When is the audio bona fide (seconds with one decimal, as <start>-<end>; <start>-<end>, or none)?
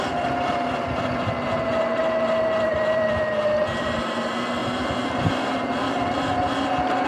0.0-2.7; 3.4-7.1